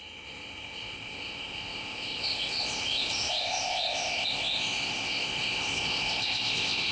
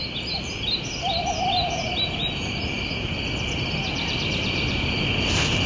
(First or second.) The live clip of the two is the second